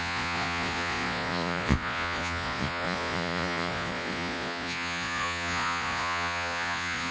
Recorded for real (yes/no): no